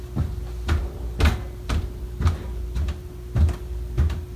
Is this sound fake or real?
real